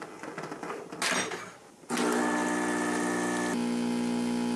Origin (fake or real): real